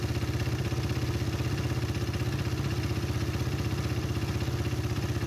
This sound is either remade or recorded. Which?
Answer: recorded